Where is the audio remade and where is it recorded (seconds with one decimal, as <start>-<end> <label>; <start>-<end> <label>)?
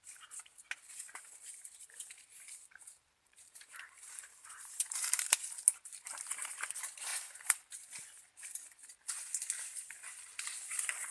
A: 0.0-1.5 recorded; 1.5-5.5 remade; 5.5-7.1 recorded; 7.1-7.7 remade; 7.7-11.1 recorded